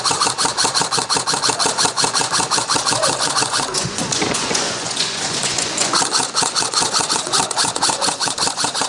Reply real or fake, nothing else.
fake